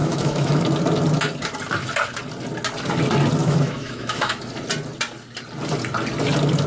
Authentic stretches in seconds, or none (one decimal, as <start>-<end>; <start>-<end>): 0.6-3.4; 4.4-6.7